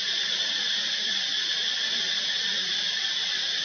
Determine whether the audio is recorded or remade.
recorded